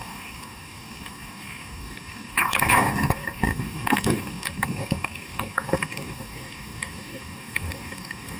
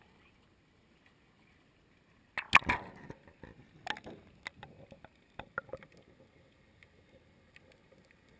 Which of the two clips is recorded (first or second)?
second